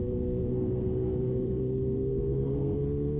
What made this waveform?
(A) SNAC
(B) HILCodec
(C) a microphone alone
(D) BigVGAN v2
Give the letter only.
A